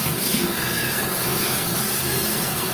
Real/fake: fake